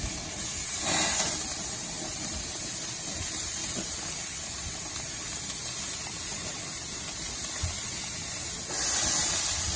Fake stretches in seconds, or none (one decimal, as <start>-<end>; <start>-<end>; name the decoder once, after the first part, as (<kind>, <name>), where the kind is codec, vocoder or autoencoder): none